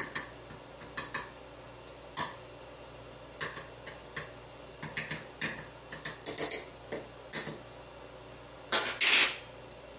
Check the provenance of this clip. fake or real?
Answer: real